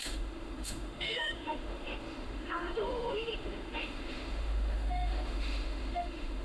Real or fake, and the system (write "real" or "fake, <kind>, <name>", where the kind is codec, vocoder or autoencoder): fake, autoencoder, DAC-VAE